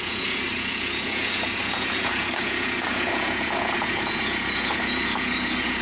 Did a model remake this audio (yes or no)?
yes